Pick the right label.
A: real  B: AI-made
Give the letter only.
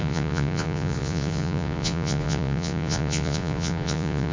B